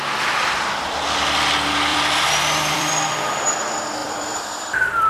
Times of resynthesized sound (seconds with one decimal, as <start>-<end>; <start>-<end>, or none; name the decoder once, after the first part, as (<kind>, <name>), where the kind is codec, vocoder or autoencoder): 1.9-2.9 (vocoder, BigVGAN v2); 4.0-5.1